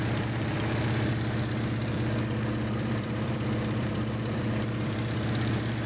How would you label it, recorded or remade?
remade